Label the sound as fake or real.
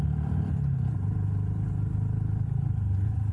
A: real